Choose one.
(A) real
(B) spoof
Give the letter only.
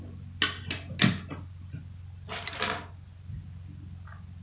A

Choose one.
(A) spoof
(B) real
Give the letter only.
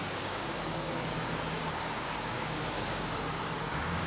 A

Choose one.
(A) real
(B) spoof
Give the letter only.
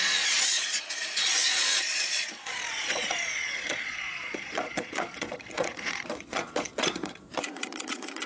B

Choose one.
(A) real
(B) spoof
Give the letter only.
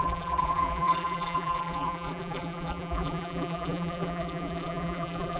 B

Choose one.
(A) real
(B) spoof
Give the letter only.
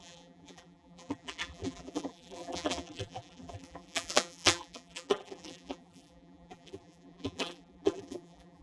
B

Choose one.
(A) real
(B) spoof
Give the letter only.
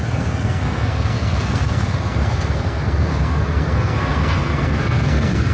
B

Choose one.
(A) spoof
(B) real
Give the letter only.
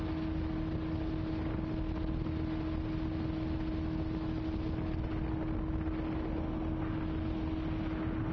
B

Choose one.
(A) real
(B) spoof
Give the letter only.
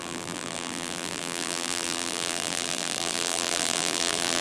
B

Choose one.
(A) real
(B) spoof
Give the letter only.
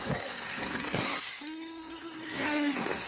B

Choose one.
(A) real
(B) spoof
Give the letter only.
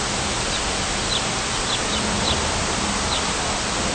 A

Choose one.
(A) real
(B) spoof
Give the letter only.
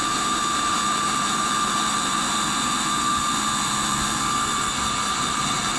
B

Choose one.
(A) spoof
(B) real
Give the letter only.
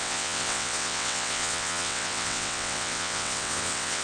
A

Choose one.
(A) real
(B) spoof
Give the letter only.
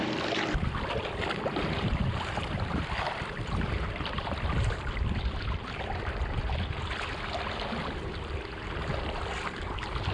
B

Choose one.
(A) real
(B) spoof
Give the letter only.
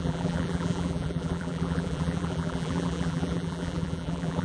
B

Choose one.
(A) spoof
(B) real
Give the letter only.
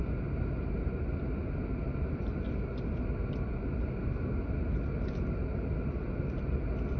B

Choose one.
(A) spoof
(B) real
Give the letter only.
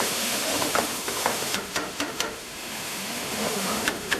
A